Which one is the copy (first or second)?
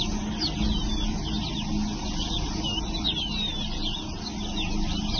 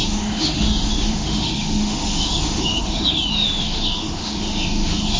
second